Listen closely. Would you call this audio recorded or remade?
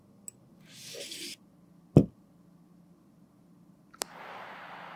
recorded